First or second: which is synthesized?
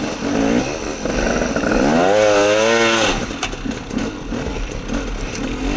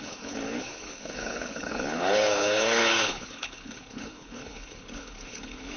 second